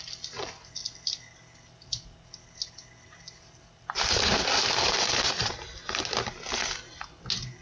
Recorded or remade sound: recorded